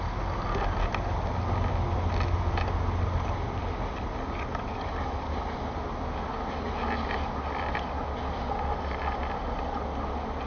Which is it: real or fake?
real